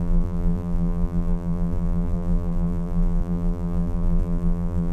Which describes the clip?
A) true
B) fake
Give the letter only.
B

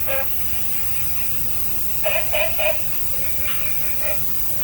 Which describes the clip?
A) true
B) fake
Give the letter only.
A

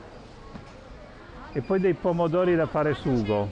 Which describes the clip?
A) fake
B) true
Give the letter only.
B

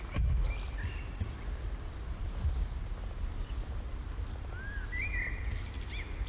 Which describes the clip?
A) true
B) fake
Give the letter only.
A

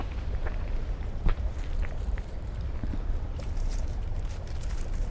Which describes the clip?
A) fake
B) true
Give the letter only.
A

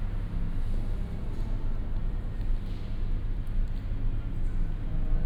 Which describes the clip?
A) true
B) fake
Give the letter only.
A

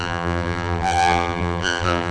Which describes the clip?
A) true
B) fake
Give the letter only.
B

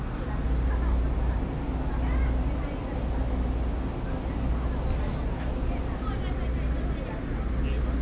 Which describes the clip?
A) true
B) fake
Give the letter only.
A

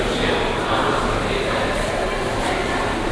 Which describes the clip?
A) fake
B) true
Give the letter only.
A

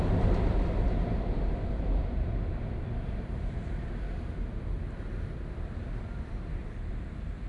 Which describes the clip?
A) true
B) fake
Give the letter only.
B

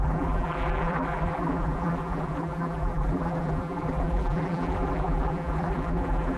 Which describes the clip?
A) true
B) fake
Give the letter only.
B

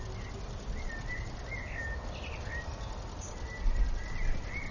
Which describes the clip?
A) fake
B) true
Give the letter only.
B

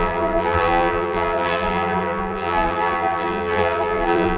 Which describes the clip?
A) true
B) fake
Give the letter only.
B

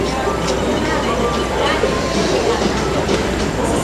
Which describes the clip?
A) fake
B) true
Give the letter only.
A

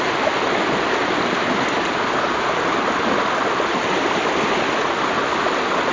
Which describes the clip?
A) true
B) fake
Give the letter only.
A